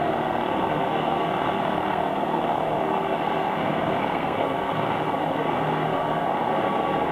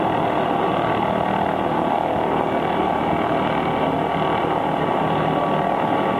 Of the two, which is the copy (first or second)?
first